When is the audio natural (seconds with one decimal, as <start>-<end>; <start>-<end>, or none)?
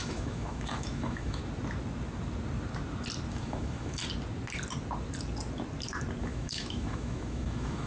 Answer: 1.4-3.3; 4.0-6.2